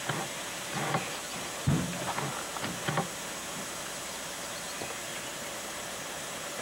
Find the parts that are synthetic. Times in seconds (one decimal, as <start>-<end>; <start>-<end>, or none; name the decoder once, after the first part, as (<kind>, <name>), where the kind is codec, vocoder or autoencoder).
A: 5.1-6.6 (vocoder, BigVGAN v2)